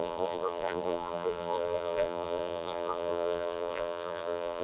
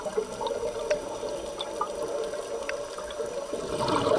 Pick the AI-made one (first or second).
first